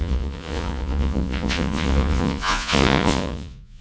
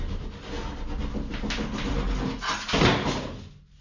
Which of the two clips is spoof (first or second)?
first